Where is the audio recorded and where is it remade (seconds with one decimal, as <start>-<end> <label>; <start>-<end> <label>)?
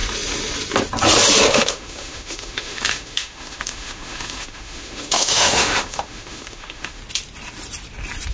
0.0-1.5 recorded; 1.5-7.0 remade; 7.0-8.3 recorded